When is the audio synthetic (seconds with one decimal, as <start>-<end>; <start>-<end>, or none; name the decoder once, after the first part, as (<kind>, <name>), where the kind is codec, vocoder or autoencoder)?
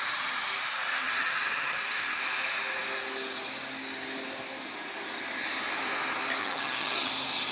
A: 1.0-2.2 (vocoder, HiFi-GAN); 6.4-7.1